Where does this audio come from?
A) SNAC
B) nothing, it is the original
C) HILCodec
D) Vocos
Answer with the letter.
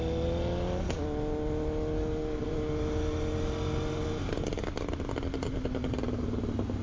B